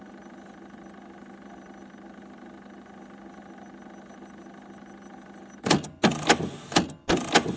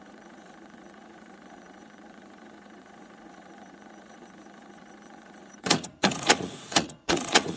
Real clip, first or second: first